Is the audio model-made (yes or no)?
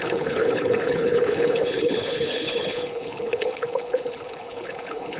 yes